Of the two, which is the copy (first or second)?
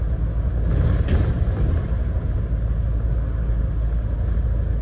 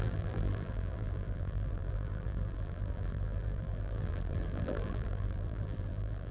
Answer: second